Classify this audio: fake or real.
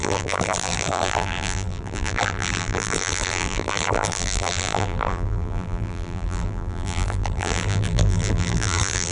fake